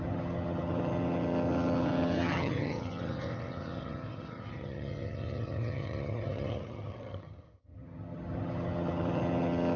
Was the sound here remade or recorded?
remade